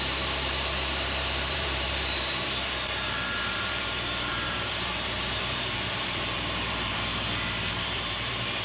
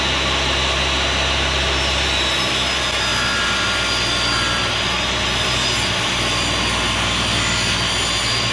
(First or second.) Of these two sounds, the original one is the second